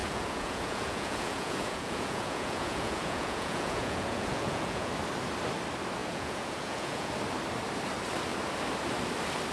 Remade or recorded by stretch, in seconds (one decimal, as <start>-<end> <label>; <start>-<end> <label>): 0.0-4.9 remade; 4.9-6.0 recorded; 6.0-7.1 remade; 7.1-9.5 recorded